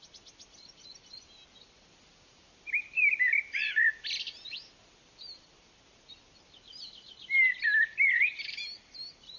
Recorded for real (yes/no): no